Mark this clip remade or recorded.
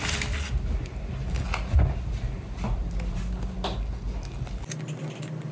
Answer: recorded